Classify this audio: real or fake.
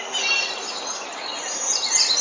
real